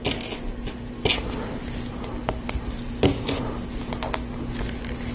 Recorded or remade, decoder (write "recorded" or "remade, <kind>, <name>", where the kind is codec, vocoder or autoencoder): recorded